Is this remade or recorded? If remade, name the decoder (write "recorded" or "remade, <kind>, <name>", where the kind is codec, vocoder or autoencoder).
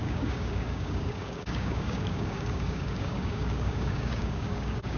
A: remade, codec, DAC